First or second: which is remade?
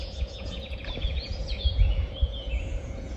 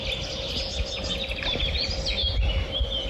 first